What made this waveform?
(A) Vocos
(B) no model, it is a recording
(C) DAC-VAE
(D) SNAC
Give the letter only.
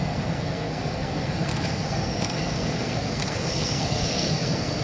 D